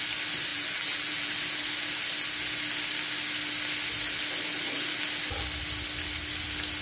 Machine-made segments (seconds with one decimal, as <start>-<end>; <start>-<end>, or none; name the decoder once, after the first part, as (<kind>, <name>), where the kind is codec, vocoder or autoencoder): 0.5-1.3 (vocoder, BigVGAN v2)

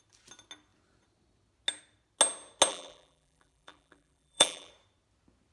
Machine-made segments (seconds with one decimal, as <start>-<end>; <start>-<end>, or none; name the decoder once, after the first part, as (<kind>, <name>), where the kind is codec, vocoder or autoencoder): 2.7-4.7 (vocoder, BigVGAN v2)

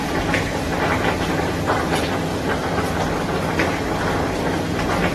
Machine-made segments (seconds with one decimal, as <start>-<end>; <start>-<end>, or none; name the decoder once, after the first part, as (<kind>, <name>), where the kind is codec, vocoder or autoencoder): 2.3-3.7 (vocoder, BigVGAN v2)

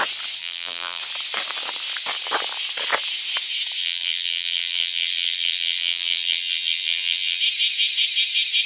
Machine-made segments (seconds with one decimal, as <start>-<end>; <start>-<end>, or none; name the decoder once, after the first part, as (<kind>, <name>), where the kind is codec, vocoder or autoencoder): 0.4-1.0 (vocoder, BigVGAN v2); 3.8-7.4